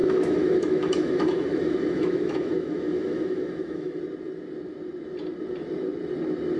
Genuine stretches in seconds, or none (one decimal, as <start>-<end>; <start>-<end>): 4.0-6.6